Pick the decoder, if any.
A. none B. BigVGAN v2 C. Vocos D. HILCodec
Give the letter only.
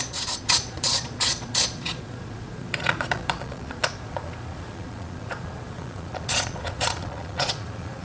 C